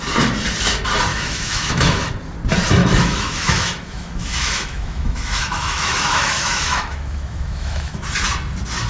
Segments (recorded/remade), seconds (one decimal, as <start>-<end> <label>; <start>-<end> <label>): 0.0-1.1 recorded; 1.1-2.1 remade; 2.1-2.8 recorded; 2.8-8.0 remade; 8.0-8.9 recorded